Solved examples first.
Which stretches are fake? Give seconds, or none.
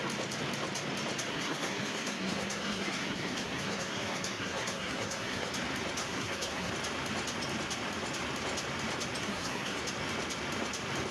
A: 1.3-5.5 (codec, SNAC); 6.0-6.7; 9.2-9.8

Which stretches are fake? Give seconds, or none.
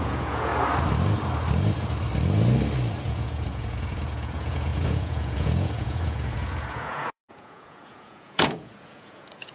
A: 0.0-0.5 (vocoder, Vocos); 3.0-9.5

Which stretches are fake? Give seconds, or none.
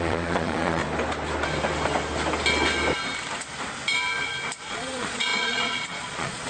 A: 0.0-0.8 (vocoder, Vocos); 4.7-6.5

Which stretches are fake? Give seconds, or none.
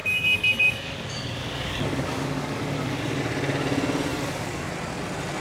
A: 0.0-3.2 (codec, DAC); 4.1-4.7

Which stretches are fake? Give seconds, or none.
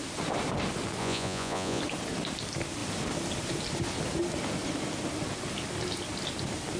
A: 1.0-1.8 (vocoder, Vocos)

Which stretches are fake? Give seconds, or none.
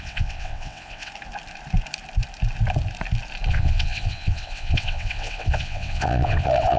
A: 0.0-1.1 (vocoder, WaveNeXt); 3.5-6.8